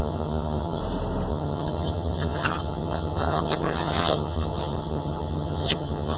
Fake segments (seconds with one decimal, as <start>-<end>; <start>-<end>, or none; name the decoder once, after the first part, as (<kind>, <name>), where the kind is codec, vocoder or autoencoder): 0.0-0.8 (vocoder, HiFi-GAN); 1.3-6.2